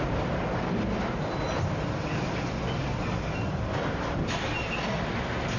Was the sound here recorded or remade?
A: recorded